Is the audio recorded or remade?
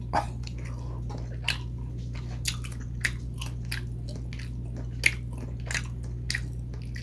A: recorded